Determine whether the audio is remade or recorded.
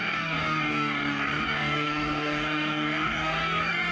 remade